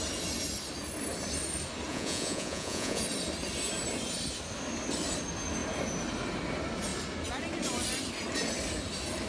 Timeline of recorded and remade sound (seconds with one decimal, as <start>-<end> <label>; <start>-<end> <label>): 0.0-1.9 recorded; 1.9-3.0 remade; 3.0-9.3 recorded